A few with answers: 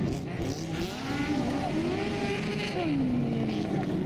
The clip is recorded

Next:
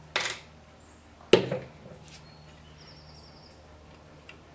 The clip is recorded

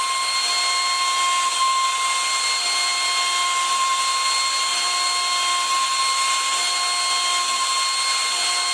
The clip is recorded